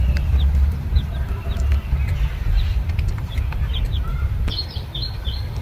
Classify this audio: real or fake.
fake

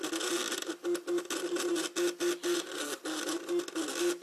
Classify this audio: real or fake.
real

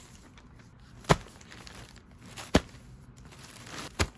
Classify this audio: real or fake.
fake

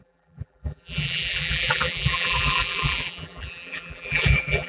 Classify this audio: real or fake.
fake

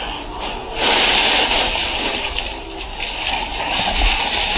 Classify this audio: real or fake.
real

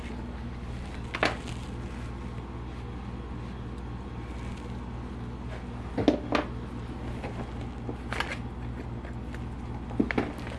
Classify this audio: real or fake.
real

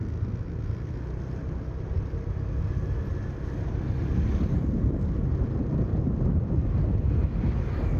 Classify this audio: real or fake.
real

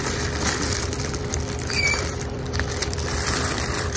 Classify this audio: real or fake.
fake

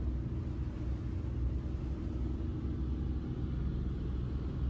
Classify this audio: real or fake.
real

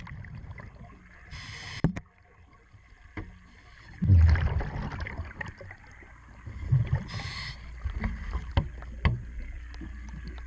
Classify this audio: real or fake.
real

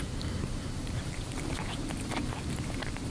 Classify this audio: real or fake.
fake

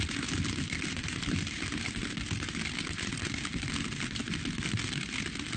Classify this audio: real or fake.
real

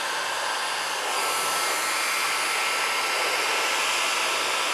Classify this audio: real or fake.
real